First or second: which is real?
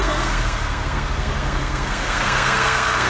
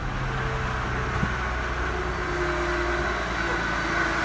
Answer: second